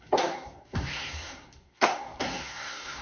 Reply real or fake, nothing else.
fake